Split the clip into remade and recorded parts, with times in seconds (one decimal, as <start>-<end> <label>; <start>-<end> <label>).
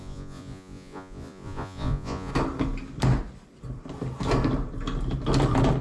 0.0-2.3 remade; 2.3-5.8 recorded